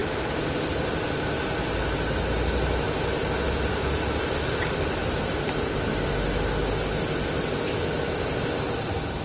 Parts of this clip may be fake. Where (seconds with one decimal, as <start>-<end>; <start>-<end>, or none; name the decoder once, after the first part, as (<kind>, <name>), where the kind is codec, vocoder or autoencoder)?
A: none